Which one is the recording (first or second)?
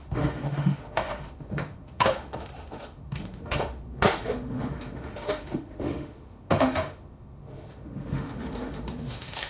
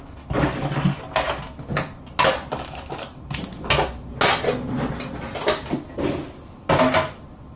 second